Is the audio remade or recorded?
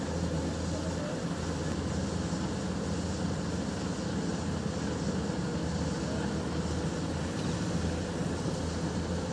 recorded